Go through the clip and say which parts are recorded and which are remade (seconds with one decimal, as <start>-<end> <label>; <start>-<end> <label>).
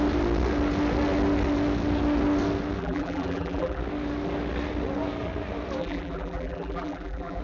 0.0-2.8 recorded; 2.8-3.8 remade; 3.8-5.8 recorded; 5.8-7.4 remade